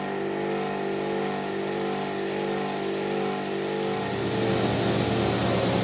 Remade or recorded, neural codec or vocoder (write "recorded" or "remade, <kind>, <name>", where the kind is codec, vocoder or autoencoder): recorded